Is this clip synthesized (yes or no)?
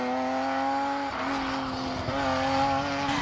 no